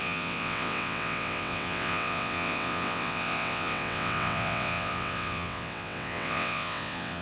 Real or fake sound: fake